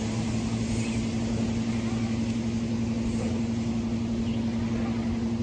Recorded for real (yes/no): yes